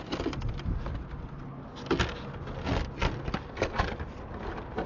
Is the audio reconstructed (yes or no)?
no